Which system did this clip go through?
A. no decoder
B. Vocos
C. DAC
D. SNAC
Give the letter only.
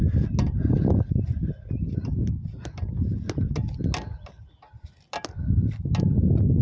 A